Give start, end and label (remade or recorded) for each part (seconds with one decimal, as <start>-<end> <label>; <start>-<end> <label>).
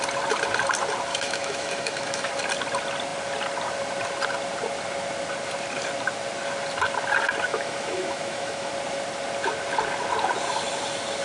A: 0.0-1.1 recorded; 1.1-2.3 remade; 2.3-7.5 recorded; 7.5-8.7 remade; 8.7-11.2 recorded